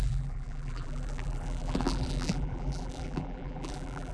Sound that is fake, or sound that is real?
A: fake